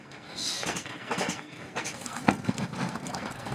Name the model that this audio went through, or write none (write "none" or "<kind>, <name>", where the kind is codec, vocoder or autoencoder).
codec, SNAC